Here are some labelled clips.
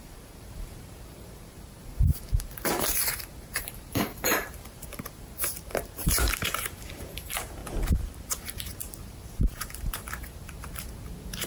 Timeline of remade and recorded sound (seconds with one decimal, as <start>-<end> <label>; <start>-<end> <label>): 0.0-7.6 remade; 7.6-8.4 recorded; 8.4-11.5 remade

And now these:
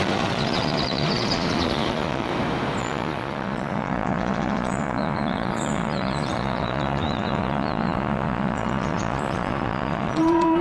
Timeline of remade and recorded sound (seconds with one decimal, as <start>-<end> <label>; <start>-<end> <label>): 0.0-2.3 remade; 2.3-2.8 recorded; 2.8-10.6 remade

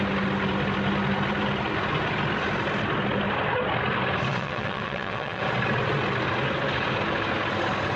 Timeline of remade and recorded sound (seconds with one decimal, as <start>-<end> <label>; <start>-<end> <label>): 0.0-4.3 recorded; 4.3-5.4 remade; 5.4-8.0 recorded

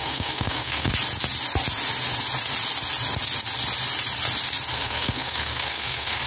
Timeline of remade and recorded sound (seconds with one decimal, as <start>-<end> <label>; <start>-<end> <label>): 0.0-0.9 remade; 0.9-4.7 recorded; 4.7-6.3 remade

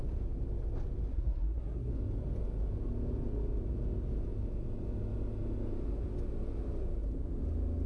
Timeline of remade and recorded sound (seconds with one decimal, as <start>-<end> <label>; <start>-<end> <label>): 0.0-1.1 recorded; 1.1-1.9 remade; 1.9-7.9 recorded

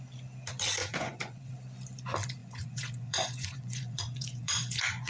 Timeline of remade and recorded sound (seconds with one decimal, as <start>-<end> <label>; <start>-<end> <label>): 0.0-0.8 recorded; 0.8-1.5 remade; 1.5-2.4 recorded; 2.4-5.1 remade